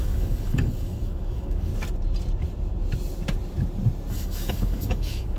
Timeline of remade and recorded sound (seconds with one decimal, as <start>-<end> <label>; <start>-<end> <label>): 0.0-1.7 remade; 1.7-4.1 recorded; 4.1-5.4 remade